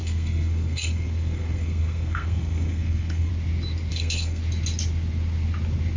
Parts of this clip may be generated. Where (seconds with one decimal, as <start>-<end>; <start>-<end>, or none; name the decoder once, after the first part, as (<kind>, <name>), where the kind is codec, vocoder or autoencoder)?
0.0-3.3 (codec, SNAC); 3.9-4.4